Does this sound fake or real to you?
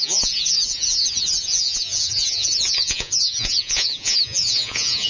fake